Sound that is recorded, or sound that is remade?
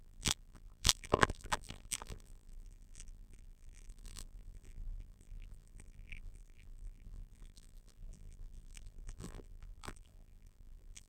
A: remade